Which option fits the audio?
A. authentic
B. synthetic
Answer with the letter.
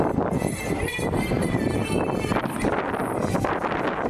A